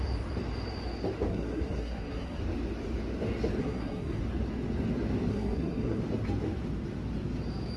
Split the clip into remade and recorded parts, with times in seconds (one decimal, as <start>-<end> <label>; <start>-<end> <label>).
0.0-1.3 recorded; 1.3-2.4 remade; 2.4-3.6 recorded; 3.6-4.2 remade; 4.2-5.3 recorded; 5.3-6.0 remade; 6.0-7.8 recorded